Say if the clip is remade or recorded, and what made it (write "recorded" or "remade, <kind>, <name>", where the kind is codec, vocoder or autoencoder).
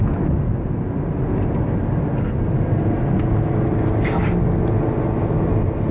recorded